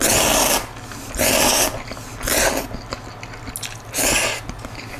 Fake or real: real